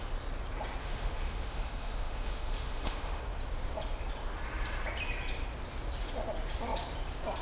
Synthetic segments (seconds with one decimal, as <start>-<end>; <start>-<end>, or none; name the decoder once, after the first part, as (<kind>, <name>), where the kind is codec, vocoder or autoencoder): 0.8-3.2 (autoencoder, DAC-VAE)

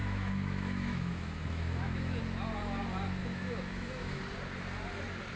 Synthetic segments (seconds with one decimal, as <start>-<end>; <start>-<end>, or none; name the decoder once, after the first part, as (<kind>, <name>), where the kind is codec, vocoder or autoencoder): 0.0-2.2 (autoencoder, DAC-VAE); 3.2-4.2

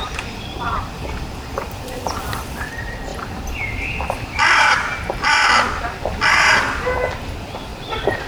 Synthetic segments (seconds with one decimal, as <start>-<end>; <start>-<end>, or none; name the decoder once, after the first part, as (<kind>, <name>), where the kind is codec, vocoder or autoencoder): none

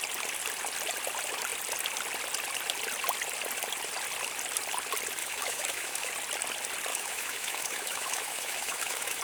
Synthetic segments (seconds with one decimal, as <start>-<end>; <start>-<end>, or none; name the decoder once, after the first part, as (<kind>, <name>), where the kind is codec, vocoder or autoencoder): 5.2-6.1 (autoencoder, DAC-VAE); 6.9-9.2

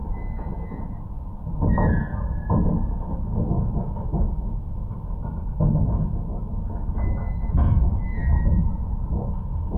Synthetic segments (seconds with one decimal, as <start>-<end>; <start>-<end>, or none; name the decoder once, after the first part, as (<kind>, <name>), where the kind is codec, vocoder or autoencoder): 3.0-8.2 (autoencoder, DAC-VAE); 9.3-9.8

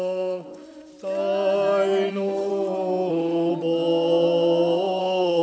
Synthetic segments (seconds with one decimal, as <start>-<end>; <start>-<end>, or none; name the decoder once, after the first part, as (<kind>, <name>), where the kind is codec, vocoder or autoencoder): 0.0-0.9 (autoencoder, DAC-VAE); 2.1-2.5; 3.1-3.5; 5.0-5.4

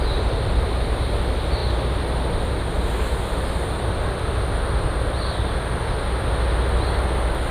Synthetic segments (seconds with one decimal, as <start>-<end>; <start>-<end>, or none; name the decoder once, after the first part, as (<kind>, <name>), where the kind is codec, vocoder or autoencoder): none

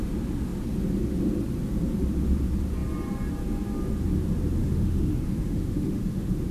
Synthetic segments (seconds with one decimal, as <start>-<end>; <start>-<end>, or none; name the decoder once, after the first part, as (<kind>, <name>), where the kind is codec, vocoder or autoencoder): 4.6-6.5 (autoencoder, DAC-VAE)